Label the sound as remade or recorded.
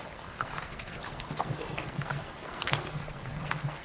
remade